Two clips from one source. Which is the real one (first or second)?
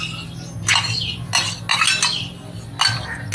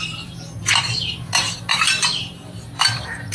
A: first